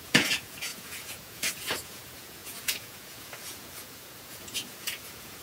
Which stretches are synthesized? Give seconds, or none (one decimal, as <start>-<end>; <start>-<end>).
0.0-5.4